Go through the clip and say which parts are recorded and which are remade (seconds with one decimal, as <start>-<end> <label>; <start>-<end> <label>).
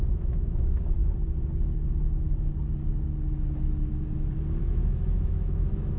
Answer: 0.0-1.0 remade; 1.0-4.6 recorded; 4.6-6.0 remade